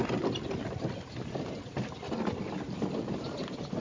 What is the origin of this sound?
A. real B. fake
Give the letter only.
A